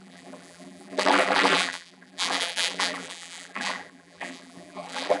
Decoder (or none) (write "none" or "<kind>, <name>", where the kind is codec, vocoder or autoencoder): vocoder, BigVGAN v2